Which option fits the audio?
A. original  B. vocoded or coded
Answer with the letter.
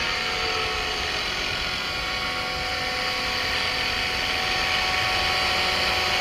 A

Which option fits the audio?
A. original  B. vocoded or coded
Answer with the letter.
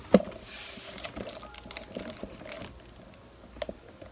A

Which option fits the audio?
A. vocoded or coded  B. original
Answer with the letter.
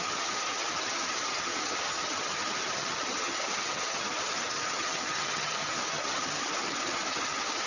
A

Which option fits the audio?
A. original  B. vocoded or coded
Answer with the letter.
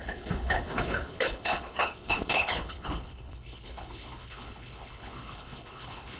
B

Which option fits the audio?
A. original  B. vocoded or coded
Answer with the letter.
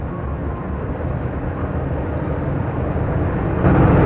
A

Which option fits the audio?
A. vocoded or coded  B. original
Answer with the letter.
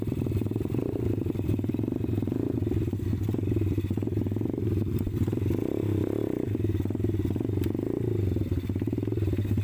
B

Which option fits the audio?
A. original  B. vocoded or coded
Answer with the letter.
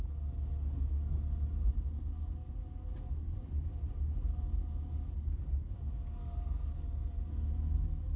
A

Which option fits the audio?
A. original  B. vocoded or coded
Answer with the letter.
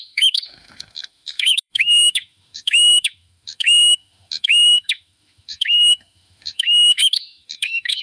B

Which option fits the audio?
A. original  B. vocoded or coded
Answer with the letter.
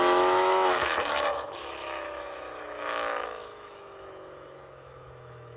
B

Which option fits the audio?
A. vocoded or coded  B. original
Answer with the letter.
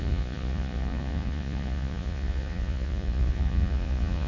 A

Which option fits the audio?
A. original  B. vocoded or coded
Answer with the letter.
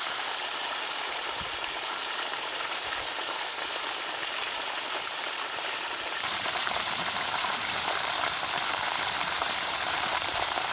B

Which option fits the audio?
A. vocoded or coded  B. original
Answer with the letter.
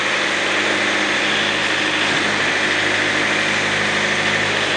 B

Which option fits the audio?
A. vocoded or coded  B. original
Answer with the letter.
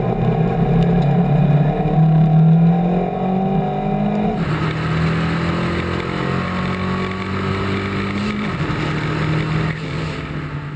B